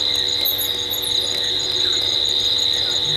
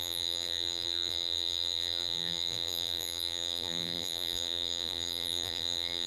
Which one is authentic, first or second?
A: first